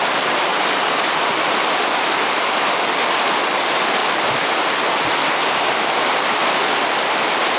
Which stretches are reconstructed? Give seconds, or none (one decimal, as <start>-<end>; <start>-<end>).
0.0-0.5; 1.7-6.4